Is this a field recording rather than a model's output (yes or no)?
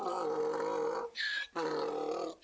yes